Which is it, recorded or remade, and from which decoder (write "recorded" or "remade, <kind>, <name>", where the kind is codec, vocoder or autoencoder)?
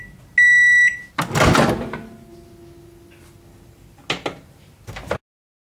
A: recorded